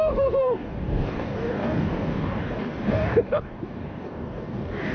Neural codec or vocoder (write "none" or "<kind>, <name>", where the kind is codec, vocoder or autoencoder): codec, DAC